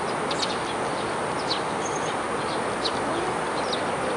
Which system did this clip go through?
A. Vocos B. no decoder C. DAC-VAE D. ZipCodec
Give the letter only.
B